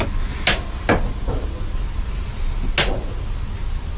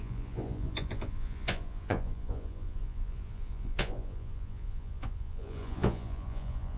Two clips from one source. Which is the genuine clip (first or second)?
first